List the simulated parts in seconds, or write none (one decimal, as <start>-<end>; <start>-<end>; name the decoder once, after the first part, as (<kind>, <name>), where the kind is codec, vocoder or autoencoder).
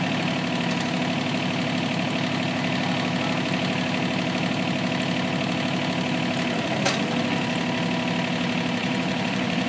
8.8-9.7 (vocoder, Vocos)